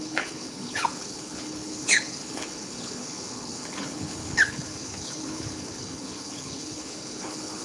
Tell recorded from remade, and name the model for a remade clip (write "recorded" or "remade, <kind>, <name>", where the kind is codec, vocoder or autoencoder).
remade, codec, HILCodec